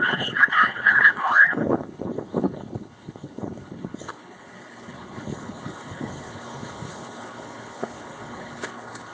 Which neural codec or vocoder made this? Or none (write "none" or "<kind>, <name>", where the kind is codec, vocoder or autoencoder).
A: codec, HILCodec